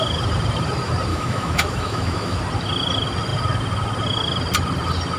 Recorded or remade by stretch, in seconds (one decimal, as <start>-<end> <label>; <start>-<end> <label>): 0.0-1.1 recorded; 1.1-2.4 remade; 2.4-5.2 recorded

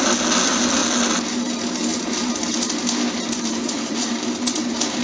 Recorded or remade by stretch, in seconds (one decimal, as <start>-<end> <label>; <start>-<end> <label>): 0.0-3.6 recorded; 3.6-4.1 remade; 4.1-5.0 recorded

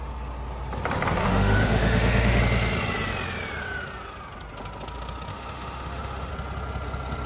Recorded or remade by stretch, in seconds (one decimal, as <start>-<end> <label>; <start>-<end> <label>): 0.0-1.2 recorded; 1.2-2.4 remade; 2.4-5.3 recorded; 5.3-6.3 remade; 6.3-7.3 recorded

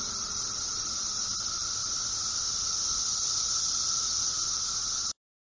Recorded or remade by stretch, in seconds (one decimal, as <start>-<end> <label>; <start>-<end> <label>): 0.0-5.5 recorded

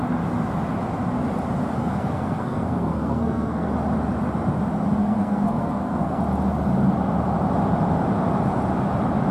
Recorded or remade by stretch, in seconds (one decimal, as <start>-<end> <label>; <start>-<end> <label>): 0.0-1.8 recorded; 1.8-3.7 remade; 3.7-5.0 recorded; 5.0-6.2 remade; 6.2-9.3 recorded

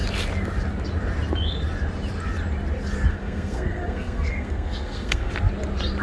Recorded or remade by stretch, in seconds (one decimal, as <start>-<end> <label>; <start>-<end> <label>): 0.0-3.1 recorded; 3.1-5.3 remade; 5.3-6.0 recorded

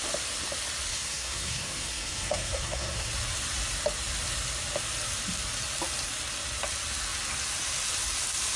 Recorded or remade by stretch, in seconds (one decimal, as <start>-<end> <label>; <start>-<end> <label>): 0.0-0.9 recorded; 0.9-3.1 remade; 3.1-8.6 recorded